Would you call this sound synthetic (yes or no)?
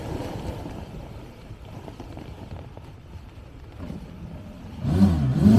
no